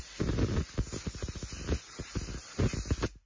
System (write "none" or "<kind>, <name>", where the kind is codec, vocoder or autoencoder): none